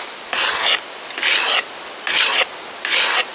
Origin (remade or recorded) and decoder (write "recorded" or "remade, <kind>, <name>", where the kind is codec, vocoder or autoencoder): recorded